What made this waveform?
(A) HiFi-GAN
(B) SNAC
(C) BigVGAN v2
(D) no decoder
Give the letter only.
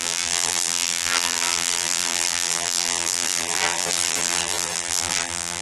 C